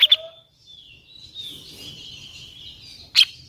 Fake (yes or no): no